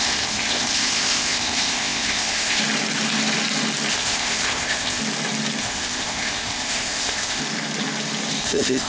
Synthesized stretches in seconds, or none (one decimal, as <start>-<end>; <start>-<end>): 0.0-2.6; 3.9-5.0; 5.6-7.4; 8.4-8.9